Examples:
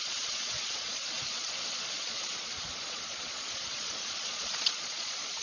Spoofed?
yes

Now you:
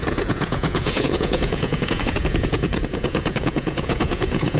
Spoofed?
yes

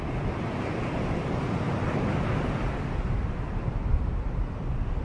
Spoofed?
no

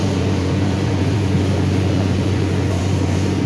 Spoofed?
yes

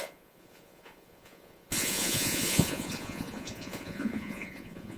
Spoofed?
yes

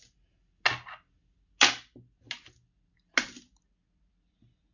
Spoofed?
no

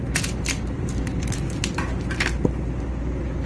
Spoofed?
no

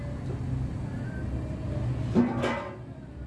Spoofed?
no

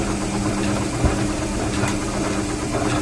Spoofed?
no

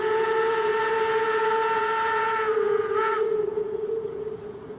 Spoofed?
yes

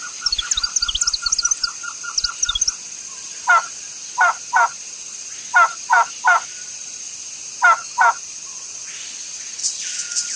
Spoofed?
no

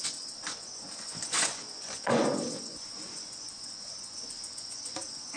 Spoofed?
yes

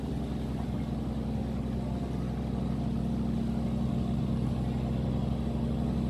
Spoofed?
no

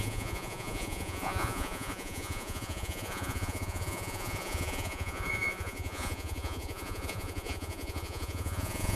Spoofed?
yes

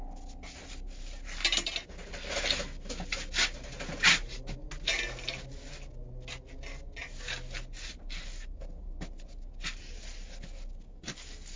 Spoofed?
no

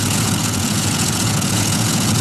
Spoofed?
yes